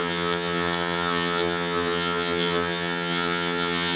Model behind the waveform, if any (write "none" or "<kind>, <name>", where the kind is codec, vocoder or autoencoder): vocoder, HiFi-GAN